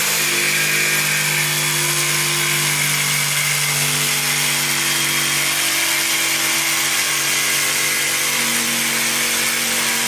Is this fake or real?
real